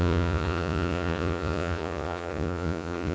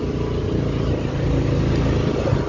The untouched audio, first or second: second